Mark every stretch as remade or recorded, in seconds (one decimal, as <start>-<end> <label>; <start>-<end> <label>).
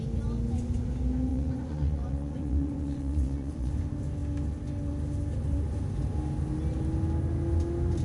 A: 0.0-1.3 recorded; 1.3-3.7 remade; 3.7-8.0 recorded